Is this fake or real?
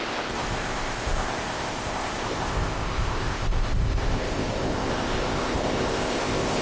fake